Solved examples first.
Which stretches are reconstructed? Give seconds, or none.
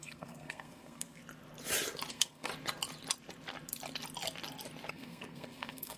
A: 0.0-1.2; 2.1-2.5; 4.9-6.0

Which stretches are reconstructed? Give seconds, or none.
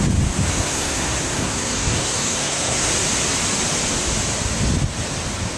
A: 0.5-2.9